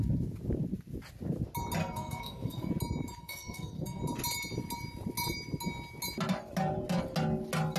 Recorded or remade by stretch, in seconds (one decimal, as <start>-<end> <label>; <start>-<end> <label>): 0.0-1.8 recorded; 1.8-2.7 remade; 2.7-3.2 recorded; 3.2-4.0 remade; 4.0-7.8 recorded